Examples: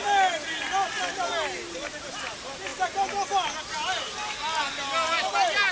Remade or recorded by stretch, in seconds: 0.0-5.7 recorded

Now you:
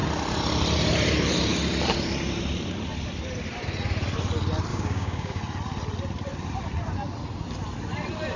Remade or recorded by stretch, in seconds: 0.0-4.7 recorded; 4.7-5.4 remade; 5.4-8.4 recorded

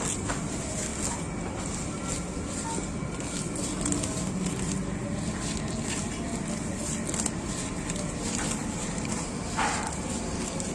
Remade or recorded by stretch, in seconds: 0.0-8.6 recorded; 8.6-9.3 remade; 9.3-10.7 recorded

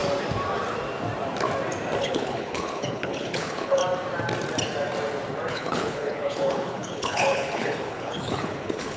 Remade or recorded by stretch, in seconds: 0.0-2.0 recorded; 2.0-3.8 remade; 3.8-5.5 recorded; 5.5-9.0 remade

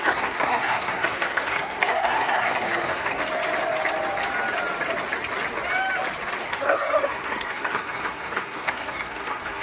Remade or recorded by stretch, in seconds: 0.0-3.2 remade; 3.2-6.5 recorded; 6.5-9.6 remade

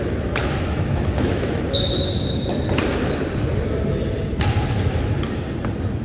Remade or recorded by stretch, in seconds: 0.0-0.4 recorded; 0.4-2.4 remade; 2.4-6.0 recorded